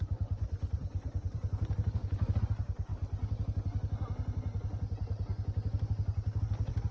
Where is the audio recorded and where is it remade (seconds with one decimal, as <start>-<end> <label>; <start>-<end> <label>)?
0.0-2.9 remade; 2.9-6.4 recorded; 6.4-6.9 remade